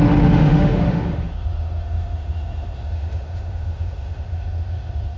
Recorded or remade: remade